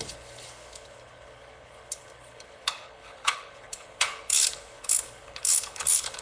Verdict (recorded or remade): remade